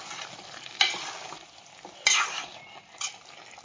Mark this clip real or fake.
real